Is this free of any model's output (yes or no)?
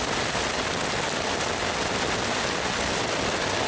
yes